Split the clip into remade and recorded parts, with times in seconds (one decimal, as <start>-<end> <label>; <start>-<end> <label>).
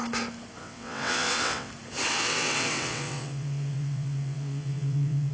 0.0-0.6 recorded; 0.6-1.7 remade; 1.7-2.1 recorded; 2.1-5.3 remade